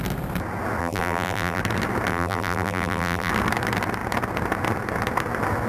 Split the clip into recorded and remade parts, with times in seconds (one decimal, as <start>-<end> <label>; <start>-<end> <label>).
0.0-0.8 recorded; 0.8-1.6 remade; 1.6-2.1 recorded; 2.1-3.3 remade; 3.3-5.7 recorded